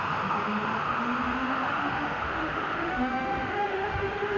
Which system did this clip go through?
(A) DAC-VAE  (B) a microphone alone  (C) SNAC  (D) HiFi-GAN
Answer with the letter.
A